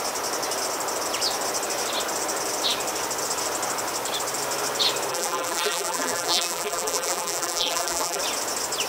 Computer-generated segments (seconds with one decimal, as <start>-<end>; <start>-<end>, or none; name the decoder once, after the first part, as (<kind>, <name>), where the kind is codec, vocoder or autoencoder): 5.1-8.2 (vocoder, BigVGAN v2)